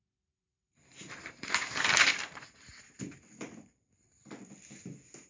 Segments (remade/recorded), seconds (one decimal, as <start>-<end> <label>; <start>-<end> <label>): 0.0-0.5 recorded; 0.5-1.5 remade; 1.5-5.3 recorded